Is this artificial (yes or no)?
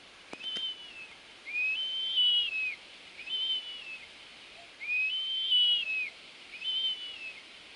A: no